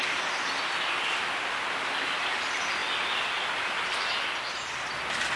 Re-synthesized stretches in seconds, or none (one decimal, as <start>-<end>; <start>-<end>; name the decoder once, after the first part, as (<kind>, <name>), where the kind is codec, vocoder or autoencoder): none